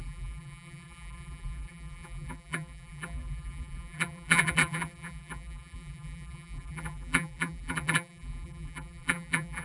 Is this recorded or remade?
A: remade